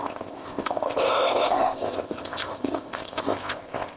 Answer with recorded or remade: remade